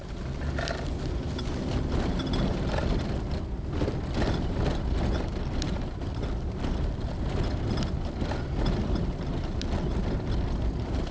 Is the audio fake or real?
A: real